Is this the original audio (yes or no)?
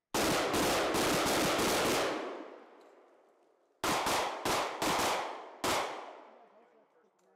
yes